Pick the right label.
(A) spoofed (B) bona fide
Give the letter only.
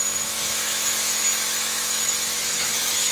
A